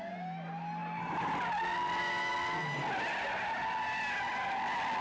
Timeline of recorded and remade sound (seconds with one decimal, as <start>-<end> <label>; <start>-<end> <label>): 0.0-5.0 recorded